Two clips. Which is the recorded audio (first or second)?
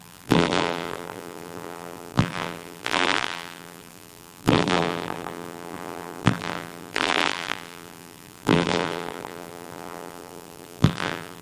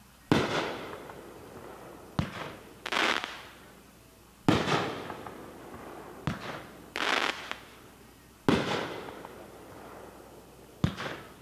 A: second